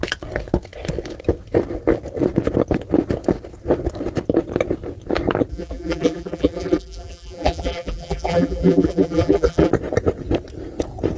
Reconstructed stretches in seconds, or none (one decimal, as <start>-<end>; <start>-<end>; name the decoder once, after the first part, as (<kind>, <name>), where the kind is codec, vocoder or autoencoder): 5.5-9.7 (vocoder, BigVGAN v2)